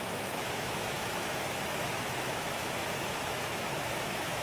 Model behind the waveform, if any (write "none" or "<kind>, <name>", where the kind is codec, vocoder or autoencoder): autoencoder, DAC-VAE